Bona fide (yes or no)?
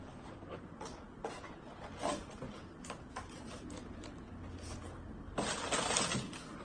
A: yes